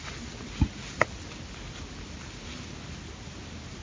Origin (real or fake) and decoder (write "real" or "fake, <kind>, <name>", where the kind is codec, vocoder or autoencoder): real